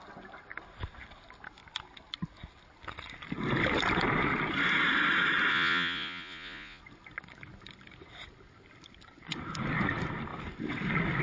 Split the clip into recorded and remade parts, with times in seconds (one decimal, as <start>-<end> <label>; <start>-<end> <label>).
0.0-5.5 recorded; 5.5-6.8 remade; 6.8-11.2 recorded